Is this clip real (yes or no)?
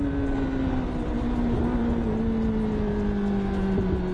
yes